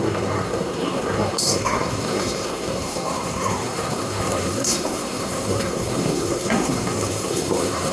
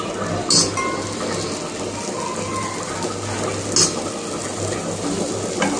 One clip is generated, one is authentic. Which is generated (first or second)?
first